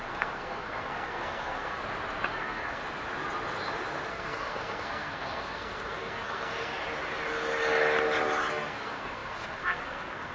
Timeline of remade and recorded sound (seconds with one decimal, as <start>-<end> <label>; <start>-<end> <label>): 0.0-1.8 remade; 1.8-2.4 recorded; 2.4-2.8 remade; 2.8-4.1 recorded; 4.1-6.7 remade; 6.7-8.5 recorded; 8.5-10.3 remade